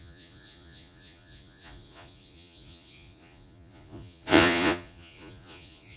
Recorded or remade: remade